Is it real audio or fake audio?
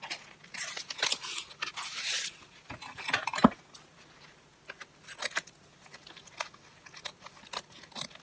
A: real